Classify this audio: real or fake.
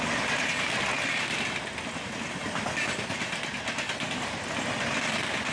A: real